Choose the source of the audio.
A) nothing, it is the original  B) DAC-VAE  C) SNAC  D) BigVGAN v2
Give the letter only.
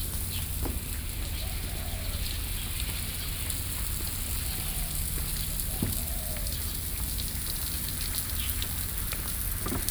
A